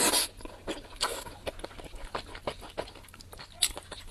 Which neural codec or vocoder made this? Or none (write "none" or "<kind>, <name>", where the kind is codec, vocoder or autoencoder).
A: none